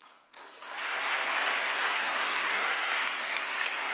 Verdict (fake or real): fake